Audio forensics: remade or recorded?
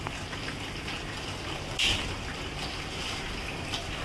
recorded